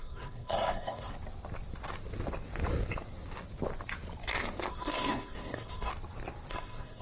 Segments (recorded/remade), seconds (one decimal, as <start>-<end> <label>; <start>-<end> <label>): 0.0-1.1 remade; 1.1-4.7 recorded; 4.7-5.9 remade; 5.9-6.5 recorded; 6.5-7.0 remade